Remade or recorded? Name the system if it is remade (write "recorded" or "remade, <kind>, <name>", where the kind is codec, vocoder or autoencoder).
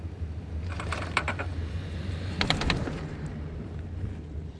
remade, vocoder, BigVGAN v2